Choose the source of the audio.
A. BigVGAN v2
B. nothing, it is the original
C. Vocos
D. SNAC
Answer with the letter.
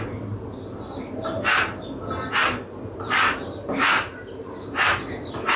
B